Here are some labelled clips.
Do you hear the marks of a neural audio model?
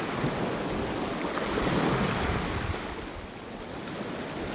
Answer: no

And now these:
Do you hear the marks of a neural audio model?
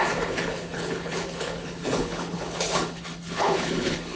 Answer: yes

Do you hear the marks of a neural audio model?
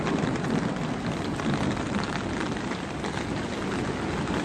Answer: no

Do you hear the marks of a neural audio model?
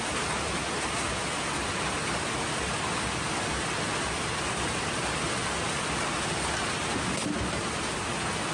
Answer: no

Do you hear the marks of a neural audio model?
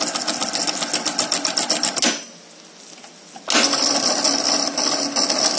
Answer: no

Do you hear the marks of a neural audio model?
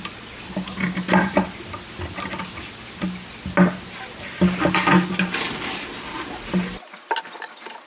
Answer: no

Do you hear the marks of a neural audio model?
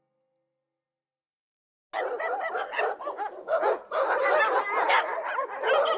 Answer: no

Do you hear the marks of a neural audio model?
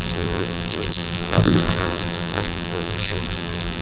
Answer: yes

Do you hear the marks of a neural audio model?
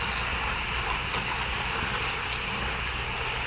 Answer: no